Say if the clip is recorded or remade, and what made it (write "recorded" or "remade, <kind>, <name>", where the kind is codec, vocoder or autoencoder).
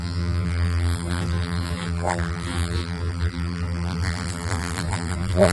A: remade, vocoder, BigVGAN v2